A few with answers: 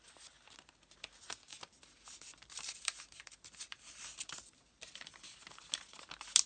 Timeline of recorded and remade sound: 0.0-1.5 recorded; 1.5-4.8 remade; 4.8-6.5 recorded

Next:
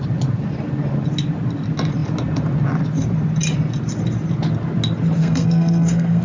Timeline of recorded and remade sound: 0.0-5.2 recorded; 5.2-6.2 remade

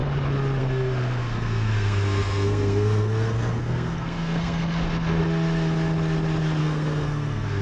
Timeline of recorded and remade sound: 0.0-0.6 recorded; 0.6-5.2 remade; 5.2-6.6 recorded; 6.6-7.6 remade

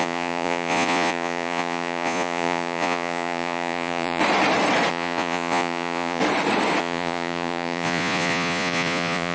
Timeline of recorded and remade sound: 0.0-4.2 remade; 4.2-4.9 recorded; 4.9-6.2 remade; 6.2-6.8 recorded; 6.8-9.3 remade

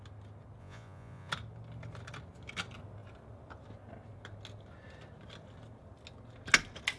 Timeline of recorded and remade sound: 0.0-0.6 recorded; 0.6-1.3 remade; 1.3-7.0 recorded

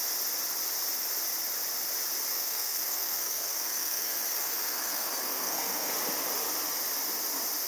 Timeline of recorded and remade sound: 0.0-2.3 recorded; 2.3-5.9 remade; 5.9-7.7 recorded

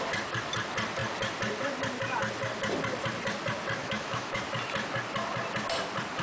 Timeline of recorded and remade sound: 0.0-3.8 recorded; 3.8-4.4 remade; 4.4-6.2 recorded